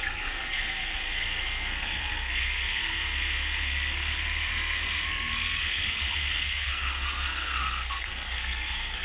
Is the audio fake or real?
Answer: fake